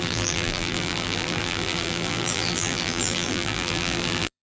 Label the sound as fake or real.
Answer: fake